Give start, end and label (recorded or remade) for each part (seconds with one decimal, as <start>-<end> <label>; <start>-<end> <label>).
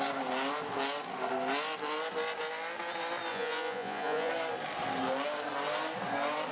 0.0-3.3 recorded; 3.3-4.3 remade; 4.3-6.5 recorded